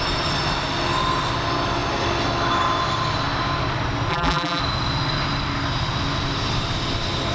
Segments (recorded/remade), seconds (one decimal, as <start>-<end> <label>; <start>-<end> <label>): 0.0-4.1 recorded; 4.1-4.6 remade; 4.6-7.3 recorded